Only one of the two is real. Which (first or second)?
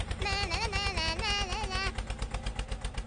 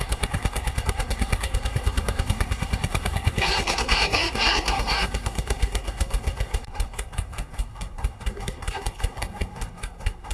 first